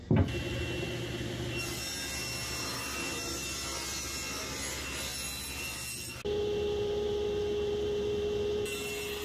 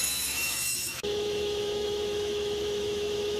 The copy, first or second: second